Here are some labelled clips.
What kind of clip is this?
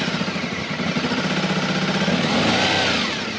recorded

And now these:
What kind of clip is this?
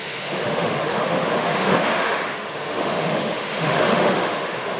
remade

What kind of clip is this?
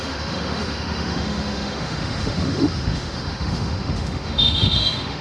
remade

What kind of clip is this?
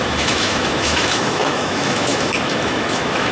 remade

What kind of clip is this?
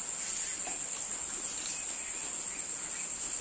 recorded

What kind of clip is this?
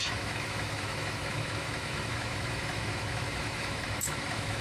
remade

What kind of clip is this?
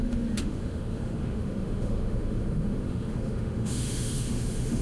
remade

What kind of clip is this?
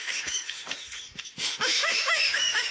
remade